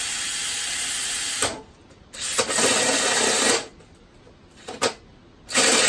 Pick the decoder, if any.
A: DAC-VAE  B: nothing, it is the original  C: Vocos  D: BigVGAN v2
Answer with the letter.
B